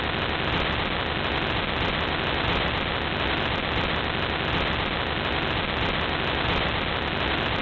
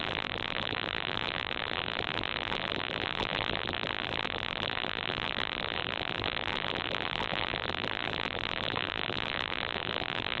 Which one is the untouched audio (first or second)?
first